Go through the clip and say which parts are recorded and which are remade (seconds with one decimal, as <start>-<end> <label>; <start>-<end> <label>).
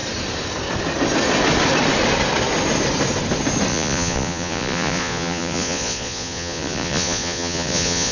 0.0-3.7 recorded; 3.7-8.1 remade